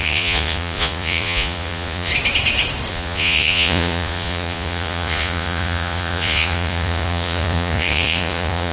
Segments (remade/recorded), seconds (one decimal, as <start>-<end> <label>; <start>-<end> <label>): 0.0-2.1 remade; 2.1-2.9 recorded; 2.9-8.7 remade